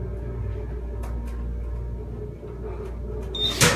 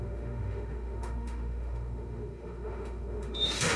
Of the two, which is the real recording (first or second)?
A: first